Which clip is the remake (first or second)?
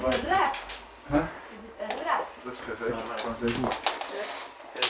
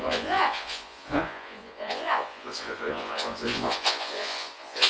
second